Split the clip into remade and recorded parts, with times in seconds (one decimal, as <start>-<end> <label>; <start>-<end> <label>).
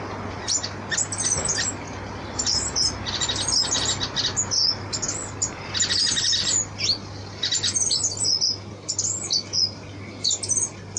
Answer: 0.0-11.0 recorded